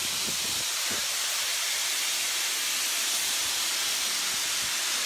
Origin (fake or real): real